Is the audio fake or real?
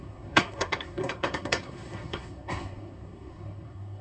fake